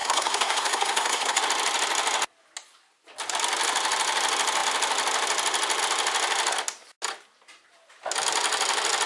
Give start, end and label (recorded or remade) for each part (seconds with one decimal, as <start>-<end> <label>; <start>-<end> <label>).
0.0-1.4 remade; 1.4-9.1 recorded